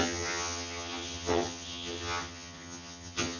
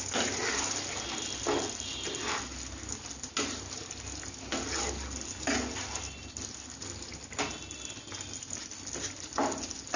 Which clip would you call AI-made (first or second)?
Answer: first